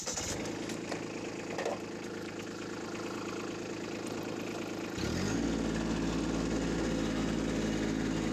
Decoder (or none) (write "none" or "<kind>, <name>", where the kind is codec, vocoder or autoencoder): none